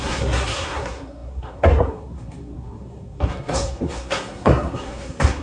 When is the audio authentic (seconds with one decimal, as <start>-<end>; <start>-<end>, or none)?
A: none